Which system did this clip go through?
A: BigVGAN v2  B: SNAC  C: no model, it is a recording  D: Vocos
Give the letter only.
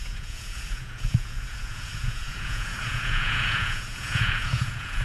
D